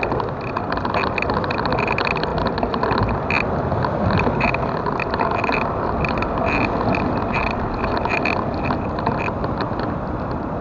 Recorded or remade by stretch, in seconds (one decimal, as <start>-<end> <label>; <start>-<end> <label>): 0.0-10.6 recorded